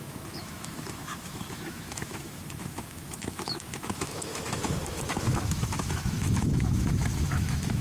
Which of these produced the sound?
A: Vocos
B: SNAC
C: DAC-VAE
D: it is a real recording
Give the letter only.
C